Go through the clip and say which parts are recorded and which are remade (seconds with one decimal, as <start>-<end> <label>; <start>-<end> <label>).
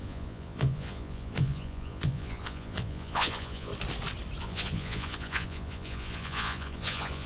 0.0-3.7 remade; 3.7-4.4 recorded; 4.4-7.3 remade